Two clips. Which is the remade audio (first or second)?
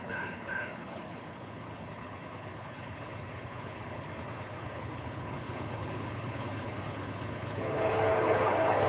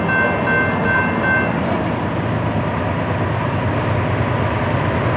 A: first